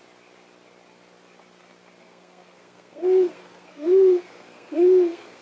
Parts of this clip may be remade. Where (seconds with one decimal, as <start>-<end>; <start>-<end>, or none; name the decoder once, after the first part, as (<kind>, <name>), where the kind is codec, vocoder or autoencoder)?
2.0-5.4 (codec, SNAC)